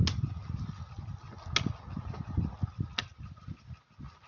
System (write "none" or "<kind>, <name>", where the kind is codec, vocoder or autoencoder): none